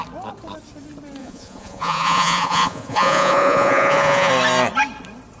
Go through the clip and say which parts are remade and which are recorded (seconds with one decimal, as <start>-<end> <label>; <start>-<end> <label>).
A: 0.0-1.2 recorded; 1.2-4.3 remade; 4.3-5.4 recorded